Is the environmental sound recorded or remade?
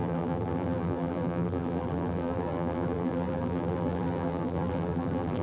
remade